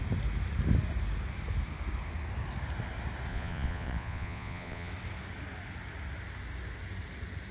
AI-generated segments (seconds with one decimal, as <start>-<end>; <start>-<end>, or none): 3.3-4.9